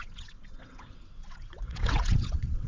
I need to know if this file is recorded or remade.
remade